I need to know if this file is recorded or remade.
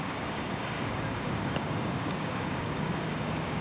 remade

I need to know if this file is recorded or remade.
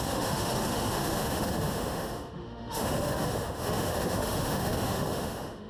remade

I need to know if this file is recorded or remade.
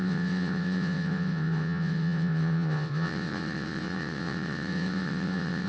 remade